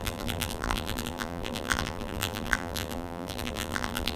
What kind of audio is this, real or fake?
fake